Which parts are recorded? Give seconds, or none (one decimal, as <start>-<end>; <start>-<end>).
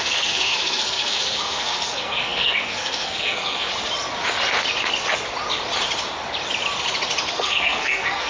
3.7-7.3